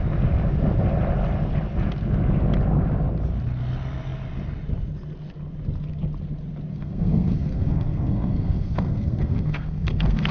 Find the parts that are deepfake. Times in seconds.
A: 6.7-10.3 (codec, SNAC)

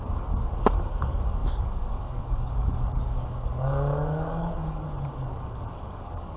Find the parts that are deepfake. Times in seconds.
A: 0.0-6.4 (codec, DAC)

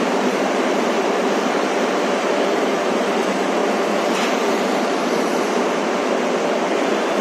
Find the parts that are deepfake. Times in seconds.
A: 0.0-3.6 (vocoder, BigVGAN v2); 4.1-7.2

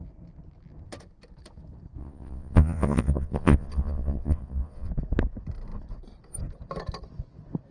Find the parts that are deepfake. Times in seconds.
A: 2.0-4.9 (vocoder, Vocos)

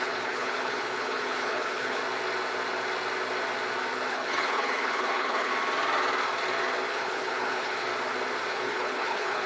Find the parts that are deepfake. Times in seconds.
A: 0.0-2.0 (codec, HILCodec); 4.1-5.5; 6.9-7.9; 8.5-9.5

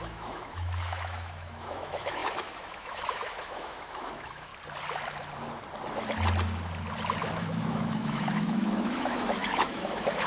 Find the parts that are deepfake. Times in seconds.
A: 0.0-4.5 (autoencoder, DAC-VAE); 7.3-10.3

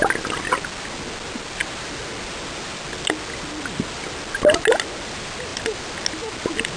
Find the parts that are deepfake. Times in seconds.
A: none